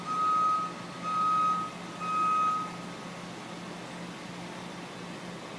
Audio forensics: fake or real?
real